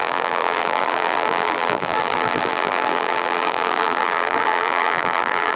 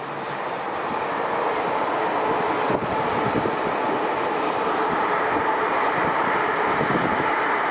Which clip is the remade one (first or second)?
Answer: first